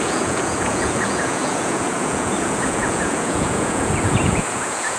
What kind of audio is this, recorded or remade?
remade